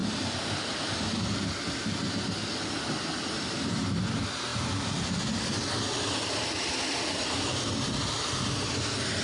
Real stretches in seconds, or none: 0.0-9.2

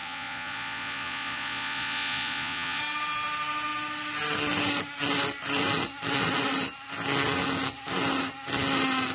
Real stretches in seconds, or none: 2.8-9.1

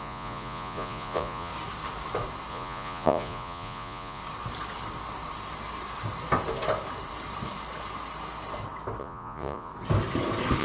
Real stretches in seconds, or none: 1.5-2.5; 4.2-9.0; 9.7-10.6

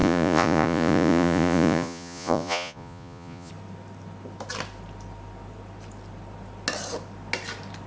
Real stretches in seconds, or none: 3.5-7.9